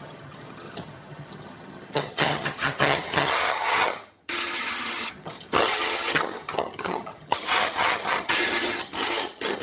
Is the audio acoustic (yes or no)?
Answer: no